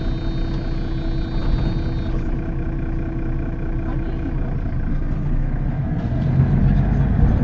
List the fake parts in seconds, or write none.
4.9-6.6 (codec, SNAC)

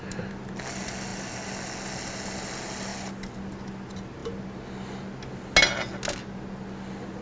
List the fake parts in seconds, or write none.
none